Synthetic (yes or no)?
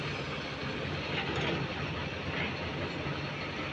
no